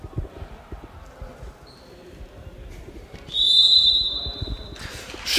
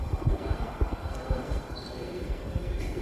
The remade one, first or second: second